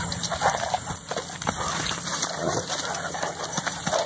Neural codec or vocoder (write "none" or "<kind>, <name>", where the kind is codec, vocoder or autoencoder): none